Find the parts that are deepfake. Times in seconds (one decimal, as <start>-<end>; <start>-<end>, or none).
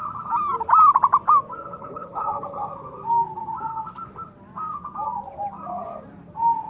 1.8-2.7